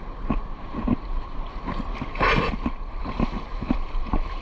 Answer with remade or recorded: recorded